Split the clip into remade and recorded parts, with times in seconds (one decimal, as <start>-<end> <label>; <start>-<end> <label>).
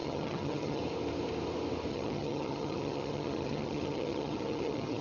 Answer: 0.0-0.8 remade; 0.8-1.9 recorded; 1.9-5.0 remade